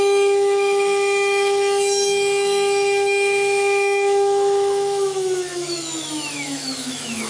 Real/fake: fake